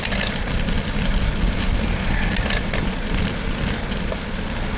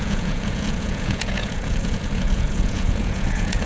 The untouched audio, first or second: first